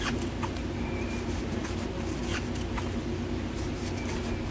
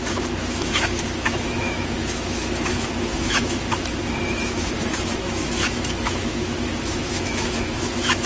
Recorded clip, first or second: first